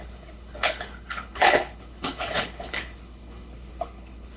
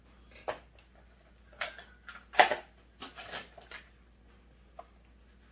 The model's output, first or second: first